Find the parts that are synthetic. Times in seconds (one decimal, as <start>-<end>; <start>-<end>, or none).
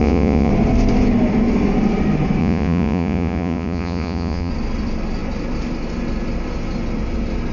0.0-0.5; 2.4-4.5